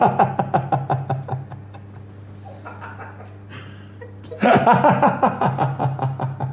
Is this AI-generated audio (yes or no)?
no